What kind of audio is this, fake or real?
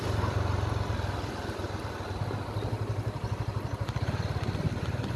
real